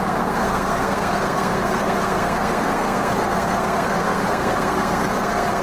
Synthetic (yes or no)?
yes